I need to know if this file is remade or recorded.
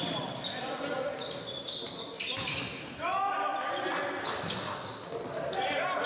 recorded